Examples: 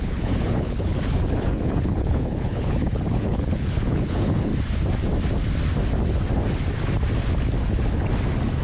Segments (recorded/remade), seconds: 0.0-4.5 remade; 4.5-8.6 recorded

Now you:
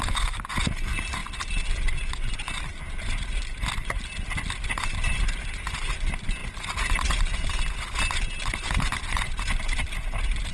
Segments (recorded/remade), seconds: 0.0-6.4 recorded; 6.4-7.2 remade; 7.2-10.5 recorded

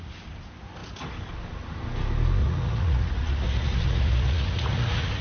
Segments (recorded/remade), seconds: 0.0-2.4 recorded; 2.4-5.2 remade